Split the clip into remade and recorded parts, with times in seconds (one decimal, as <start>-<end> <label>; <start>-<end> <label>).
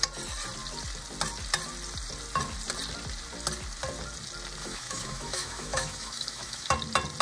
0.0-4.6 recorded; 4.6-6.7 remade; 6.7-7.2 recorded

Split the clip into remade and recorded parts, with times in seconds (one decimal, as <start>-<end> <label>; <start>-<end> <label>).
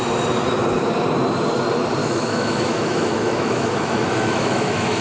0.0-2.0 recorded; 2.0-5.0 remade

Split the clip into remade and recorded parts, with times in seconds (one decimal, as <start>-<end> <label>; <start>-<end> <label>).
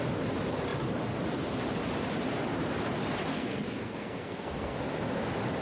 0.0-3.3 recorded; 3.3-4.8 remade; 4.8-5.6 recorded